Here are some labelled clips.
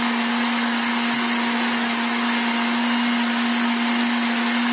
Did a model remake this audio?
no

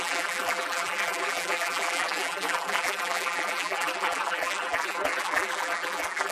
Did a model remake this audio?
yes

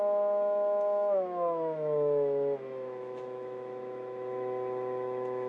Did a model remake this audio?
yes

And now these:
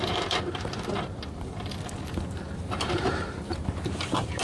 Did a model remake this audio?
yes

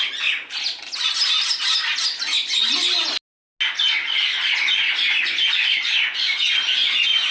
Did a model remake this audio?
no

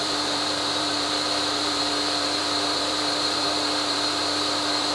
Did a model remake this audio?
yes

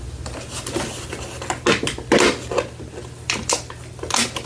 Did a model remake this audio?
no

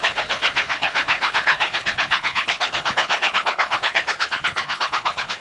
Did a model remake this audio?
yes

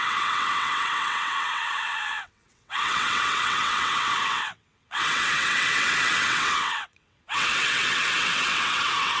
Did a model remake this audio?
yes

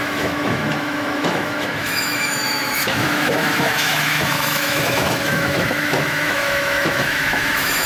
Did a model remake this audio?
yes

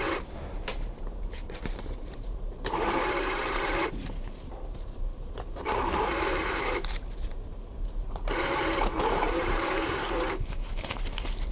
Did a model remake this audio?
yes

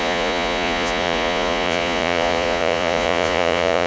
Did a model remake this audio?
yes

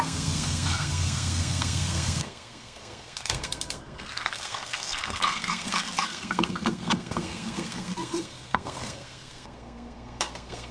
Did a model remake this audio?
yes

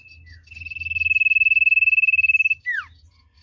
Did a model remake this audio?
no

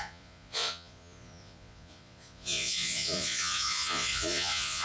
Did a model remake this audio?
yes